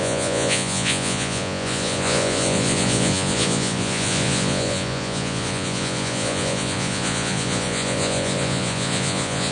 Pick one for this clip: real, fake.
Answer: fake